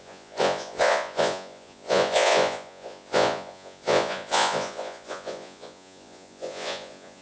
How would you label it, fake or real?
fake